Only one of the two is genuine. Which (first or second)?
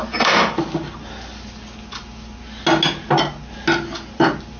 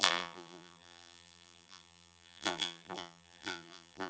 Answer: first